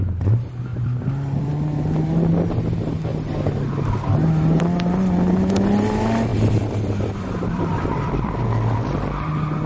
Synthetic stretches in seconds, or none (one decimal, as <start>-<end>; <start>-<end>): 0.7-1.5; 6.3-8.3